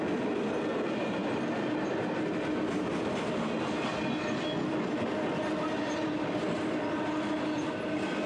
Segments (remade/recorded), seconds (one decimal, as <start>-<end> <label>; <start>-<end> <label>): 0.0-8.3 recorded